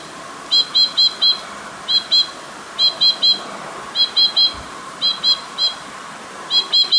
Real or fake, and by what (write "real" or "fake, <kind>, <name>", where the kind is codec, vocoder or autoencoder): real